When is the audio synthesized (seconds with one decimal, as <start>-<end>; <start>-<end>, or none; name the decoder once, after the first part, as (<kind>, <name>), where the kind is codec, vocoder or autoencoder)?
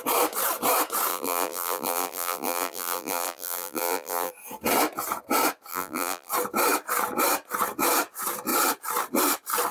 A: 1.1-4.3 (vocoder, BigVGAN v2); 5.7-6.3